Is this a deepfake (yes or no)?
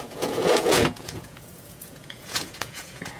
yes